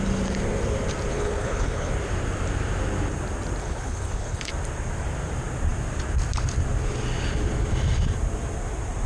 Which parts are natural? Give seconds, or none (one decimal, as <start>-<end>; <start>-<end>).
0.0-1.1; 1.9-3.6; 4.5-9.1